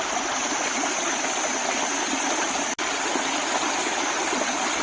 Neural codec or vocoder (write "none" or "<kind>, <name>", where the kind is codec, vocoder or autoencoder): none